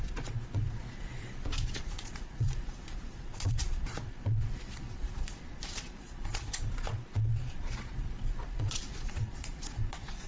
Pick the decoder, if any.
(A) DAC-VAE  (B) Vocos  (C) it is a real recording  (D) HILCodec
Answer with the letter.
B